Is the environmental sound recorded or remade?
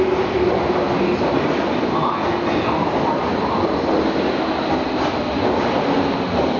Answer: recorded